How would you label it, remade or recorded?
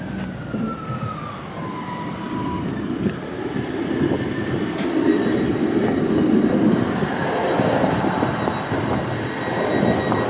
recorded